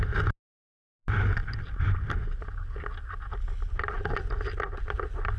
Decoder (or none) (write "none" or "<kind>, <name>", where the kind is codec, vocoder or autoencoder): none